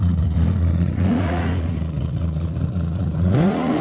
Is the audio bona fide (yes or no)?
no